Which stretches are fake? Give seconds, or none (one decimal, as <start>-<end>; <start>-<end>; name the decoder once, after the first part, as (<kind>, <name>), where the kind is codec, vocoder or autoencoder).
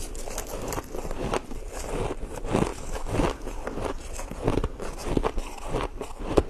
none